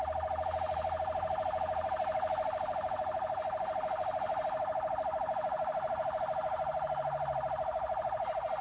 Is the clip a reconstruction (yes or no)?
yes